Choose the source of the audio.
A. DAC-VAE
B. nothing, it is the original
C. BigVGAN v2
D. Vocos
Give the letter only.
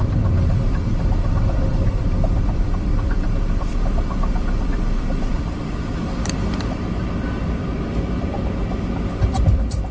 C